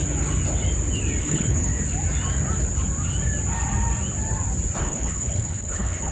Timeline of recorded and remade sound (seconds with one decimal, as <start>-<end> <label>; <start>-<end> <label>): 0.0-1.2 recorded; 1.2-1.7 remade; 1.7-4.8 recorded; 4.8-6.1 remade